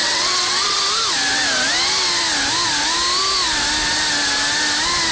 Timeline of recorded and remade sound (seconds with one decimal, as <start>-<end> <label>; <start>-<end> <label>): 0.0-0.8 remade; 0.8-5.1 recorded